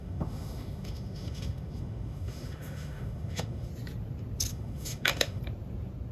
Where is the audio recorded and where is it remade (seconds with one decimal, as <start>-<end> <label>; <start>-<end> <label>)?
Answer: 0.0-3.7 remade; 3.7-4.5 recorded; 4.5-5.4 remade; 5.4-6.1 recorded

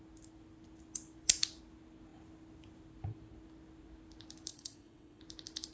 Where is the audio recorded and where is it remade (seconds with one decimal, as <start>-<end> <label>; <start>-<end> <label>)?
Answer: 0.0-4.5 recorded; 4.5-5.2 remade; 5.2-5.7 recorded

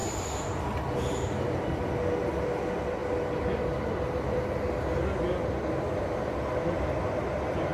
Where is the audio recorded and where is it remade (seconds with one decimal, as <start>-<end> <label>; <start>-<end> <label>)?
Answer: 0.0-7.7 recorded

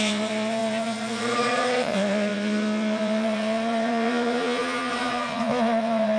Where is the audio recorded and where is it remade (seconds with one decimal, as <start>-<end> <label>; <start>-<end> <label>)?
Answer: 0.0-6.2 remade

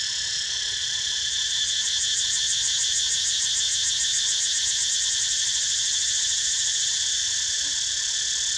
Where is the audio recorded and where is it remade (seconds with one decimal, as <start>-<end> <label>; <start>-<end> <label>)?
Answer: 0.0-0.8 recorded; 0.8-1.5 remade; 1.5-4.8 recorded; 4.8-7.9 remade; 7.9-8.6 recorded

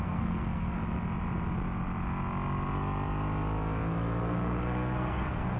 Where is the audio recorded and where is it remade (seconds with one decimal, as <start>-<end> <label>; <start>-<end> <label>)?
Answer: 0.0-0.8 remade; 0.8-4.2 recorded; 4.2-5.6 remade

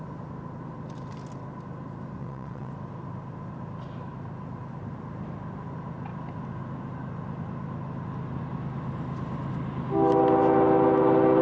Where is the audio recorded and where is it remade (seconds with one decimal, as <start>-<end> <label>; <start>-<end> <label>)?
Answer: 0.0-2.2 recorded; 2.2-2.7 remade; 2.7-11.4 recorded